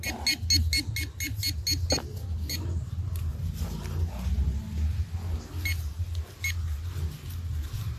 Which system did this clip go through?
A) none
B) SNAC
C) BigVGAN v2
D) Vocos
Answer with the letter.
A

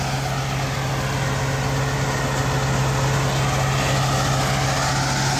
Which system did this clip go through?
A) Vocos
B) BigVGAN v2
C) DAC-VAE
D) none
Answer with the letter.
D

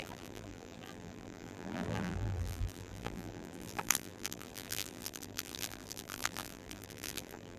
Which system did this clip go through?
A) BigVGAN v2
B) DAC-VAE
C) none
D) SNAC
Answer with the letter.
A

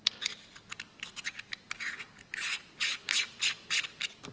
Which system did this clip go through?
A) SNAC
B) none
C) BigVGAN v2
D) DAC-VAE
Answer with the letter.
B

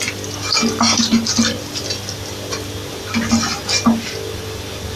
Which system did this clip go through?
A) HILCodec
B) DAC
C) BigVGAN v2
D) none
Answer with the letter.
D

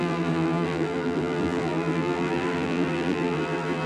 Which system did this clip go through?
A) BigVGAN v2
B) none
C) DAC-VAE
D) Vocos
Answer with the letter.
A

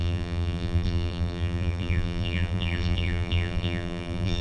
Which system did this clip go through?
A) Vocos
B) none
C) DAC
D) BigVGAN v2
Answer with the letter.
D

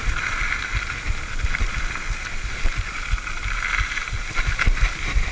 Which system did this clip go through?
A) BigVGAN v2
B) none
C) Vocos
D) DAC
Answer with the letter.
B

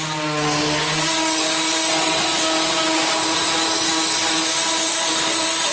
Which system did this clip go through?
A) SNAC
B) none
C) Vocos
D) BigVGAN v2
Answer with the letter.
B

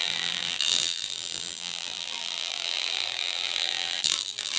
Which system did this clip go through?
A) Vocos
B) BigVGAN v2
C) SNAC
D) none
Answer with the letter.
B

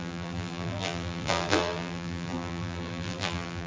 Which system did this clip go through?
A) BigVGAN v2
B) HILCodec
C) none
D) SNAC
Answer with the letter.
A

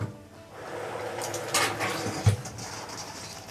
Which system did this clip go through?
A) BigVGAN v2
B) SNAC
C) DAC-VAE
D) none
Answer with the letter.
D